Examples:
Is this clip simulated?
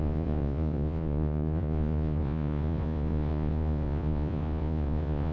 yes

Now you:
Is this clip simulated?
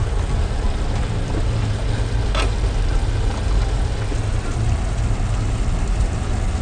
no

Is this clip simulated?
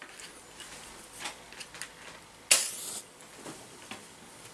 no